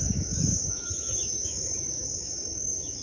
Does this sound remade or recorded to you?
remade